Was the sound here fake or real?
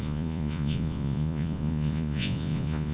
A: fake